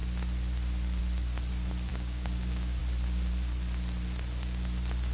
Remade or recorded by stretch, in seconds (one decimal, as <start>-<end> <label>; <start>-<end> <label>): 0.0-1.9 recorded; 1.9-2.8 remade; 2.8-5.1 recorded